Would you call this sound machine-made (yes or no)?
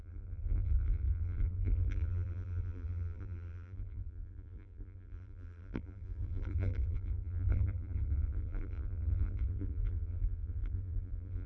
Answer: yes